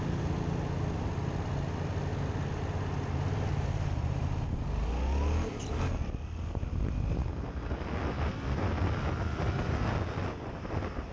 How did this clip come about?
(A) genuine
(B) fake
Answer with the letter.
A